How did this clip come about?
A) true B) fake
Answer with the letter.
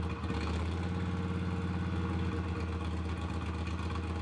A